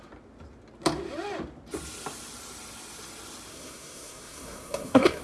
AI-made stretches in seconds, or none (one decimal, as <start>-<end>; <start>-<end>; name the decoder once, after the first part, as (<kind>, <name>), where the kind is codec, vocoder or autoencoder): 3.5-5.2 (codec, SNAC)